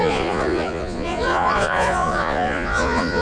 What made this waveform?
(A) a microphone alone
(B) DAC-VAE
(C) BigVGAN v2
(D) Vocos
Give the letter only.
D